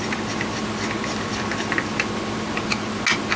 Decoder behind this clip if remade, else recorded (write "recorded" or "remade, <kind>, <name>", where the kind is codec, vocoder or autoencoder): recorded